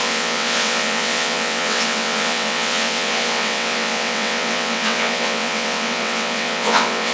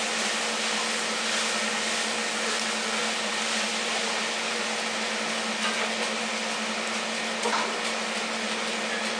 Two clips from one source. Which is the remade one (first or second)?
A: first